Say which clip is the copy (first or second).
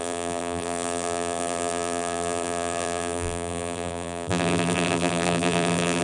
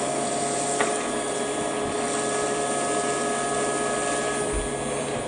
first